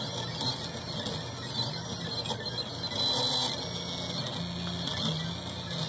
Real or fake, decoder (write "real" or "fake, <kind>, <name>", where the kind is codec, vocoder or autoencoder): real